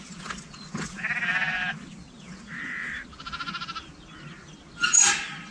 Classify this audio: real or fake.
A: real